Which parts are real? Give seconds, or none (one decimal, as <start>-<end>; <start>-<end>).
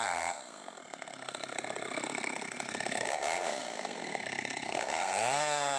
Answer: none